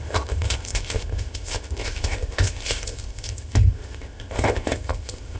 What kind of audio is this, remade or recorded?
remade